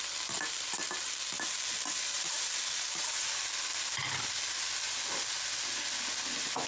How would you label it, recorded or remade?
recorded